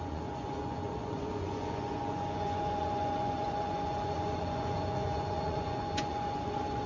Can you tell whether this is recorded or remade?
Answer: remade